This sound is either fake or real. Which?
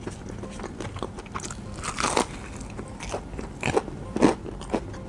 real